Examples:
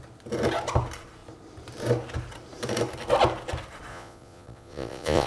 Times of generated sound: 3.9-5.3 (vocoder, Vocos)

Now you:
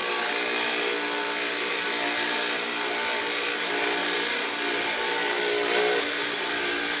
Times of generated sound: none